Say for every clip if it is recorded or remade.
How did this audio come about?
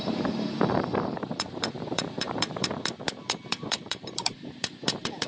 remade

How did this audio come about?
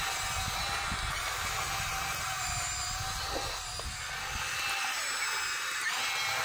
recorded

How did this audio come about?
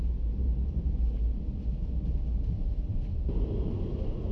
recorded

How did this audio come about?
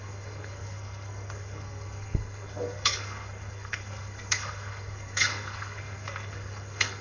remade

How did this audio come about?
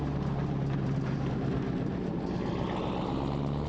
recorded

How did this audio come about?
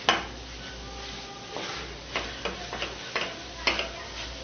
recorded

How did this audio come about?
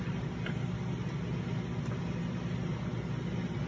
recorded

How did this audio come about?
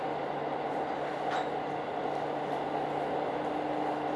recorded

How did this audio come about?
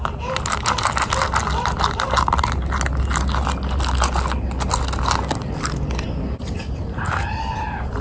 recorded